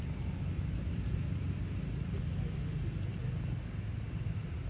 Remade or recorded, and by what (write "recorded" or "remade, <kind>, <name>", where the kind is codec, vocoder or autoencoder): recorded